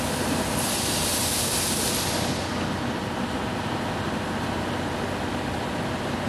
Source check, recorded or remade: recorded